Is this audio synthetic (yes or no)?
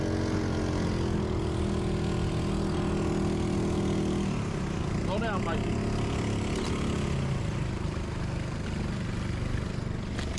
no